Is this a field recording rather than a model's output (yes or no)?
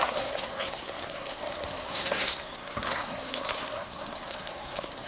no